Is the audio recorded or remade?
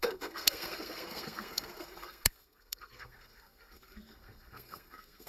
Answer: remade